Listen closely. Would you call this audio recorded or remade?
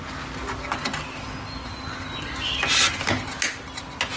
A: recorded